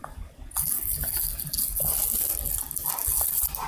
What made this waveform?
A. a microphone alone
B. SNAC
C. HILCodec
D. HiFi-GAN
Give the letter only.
A